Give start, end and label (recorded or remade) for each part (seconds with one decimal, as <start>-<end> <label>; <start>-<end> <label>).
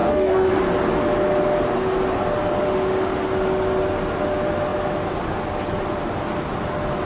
0.0-0.5 remade; 0.5-7.1 recorded